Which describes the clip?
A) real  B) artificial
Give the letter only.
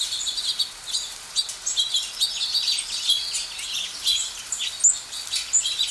A